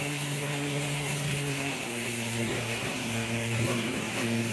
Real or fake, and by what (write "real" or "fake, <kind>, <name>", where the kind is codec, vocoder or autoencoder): fake, codec, SNAC